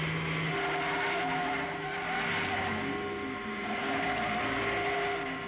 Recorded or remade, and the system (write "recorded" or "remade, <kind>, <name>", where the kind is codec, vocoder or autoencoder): recorded